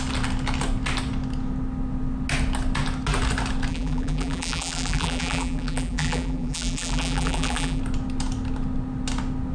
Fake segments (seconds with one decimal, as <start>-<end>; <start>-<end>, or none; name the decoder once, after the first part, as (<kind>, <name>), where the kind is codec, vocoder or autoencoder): 3.7-7.8 (vocoder, BigVGAN v2)